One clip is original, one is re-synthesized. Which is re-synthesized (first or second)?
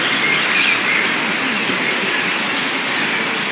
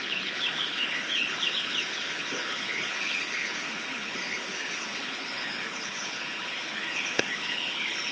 second